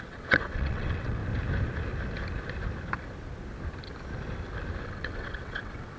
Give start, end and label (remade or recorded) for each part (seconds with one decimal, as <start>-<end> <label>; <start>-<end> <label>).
0.0-1.2 remade; 1.2-4.8 recorded; 4.8-6.0 remade